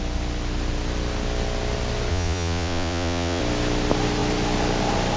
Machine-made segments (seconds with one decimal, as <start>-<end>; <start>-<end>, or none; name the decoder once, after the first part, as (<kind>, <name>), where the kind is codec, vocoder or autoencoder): 2.1-3.4 (vocoder, Vocos)